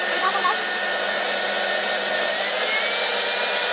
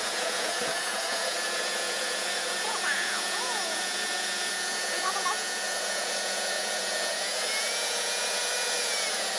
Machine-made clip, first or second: second